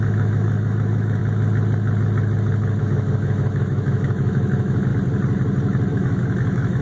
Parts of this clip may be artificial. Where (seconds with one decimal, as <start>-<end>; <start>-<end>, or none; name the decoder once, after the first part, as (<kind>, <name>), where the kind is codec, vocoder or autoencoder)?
0.0-1.2 (autoencoder, DAC-VAE); 2.8-4.9; 5.9-6.8